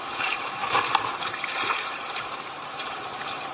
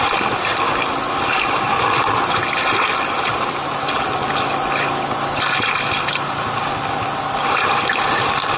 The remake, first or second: first